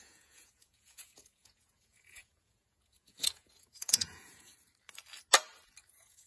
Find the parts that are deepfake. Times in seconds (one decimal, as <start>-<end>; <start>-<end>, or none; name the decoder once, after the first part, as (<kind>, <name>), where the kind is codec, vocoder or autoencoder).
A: 0.0-4.5 (vocoder, Vocos); 5.8-6.3